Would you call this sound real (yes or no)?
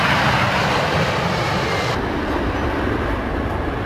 yes